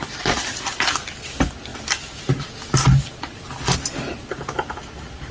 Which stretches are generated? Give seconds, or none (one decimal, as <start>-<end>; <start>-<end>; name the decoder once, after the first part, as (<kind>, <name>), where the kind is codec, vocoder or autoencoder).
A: none

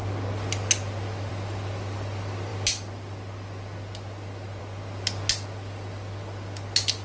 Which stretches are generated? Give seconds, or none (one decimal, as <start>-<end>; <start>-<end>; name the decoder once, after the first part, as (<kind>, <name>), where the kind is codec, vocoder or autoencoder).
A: none

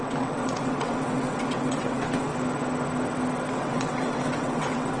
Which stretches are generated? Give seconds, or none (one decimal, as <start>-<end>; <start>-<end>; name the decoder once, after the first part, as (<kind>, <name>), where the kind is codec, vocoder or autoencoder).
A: 0.0-2.3 (vocoder, WaveNeXt); 3.5-5.0